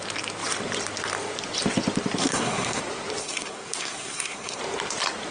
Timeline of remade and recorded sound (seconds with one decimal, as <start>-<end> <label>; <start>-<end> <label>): 0.0-2.2 recorded; 2.2-2.8 remade; 2.8-3.2 recorded; 3.2-4.6 remade; 4.6-5.3 recorded